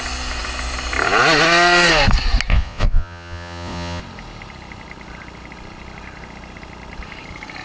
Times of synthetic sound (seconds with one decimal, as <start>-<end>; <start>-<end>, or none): 2.5-4.0